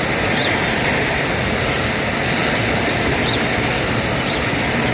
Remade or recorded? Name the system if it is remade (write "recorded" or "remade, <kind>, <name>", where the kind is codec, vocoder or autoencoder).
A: remade, vocoder, BigVGAN v2